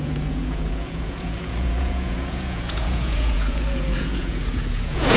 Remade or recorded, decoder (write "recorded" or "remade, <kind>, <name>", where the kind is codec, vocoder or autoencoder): remade, vocoder, Vocos